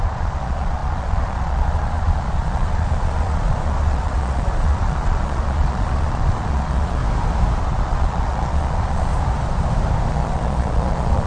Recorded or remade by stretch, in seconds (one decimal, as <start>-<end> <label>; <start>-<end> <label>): 0.0-7.0 remade; 7.0-7.6 recorded; 7.6-9.1 remade; 9.1-10.1 recorded; 10.1-11.3 remade

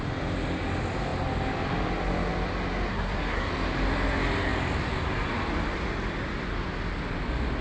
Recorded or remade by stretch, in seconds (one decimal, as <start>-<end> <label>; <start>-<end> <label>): 0.0-2.9 recorded; 2.9-3.5 remade; 3.5-7.6 recorded

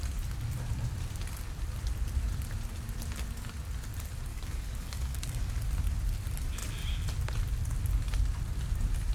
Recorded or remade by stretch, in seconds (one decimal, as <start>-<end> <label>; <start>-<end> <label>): 0.0-4.3 recorded; 4.3-5.5 remade; 5.5-9.1 recorded